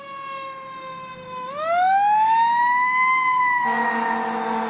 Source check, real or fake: real